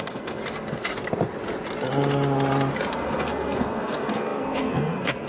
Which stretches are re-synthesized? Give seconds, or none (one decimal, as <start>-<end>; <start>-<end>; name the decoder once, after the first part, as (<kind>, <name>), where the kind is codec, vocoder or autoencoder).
0.0-0.4 (codec, SNAC); 2.9-5.3